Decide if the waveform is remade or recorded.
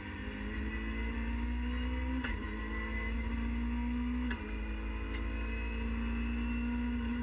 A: recorded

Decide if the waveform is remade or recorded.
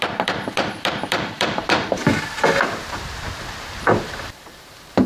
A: remade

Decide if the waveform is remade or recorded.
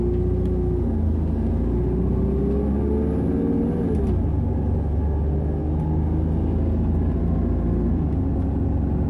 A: recorded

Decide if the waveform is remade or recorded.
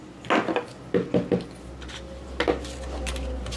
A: recorded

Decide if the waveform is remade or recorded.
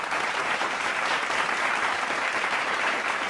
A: remade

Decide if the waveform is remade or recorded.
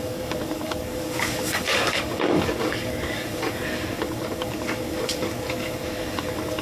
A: remade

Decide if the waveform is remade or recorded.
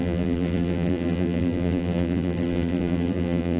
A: remade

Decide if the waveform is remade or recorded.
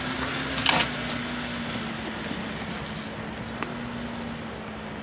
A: recorded